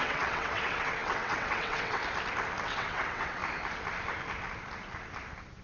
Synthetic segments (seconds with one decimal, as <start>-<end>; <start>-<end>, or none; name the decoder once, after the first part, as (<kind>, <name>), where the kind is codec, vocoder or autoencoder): 0.0-2.0 (vocoder, WaveNeXt); 2.6-3.4